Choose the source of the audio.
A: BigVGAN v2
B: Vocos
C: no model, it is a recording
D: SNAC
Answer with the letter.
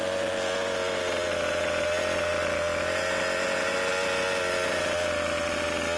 C